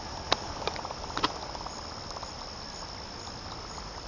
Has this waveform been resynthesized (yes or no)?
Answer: no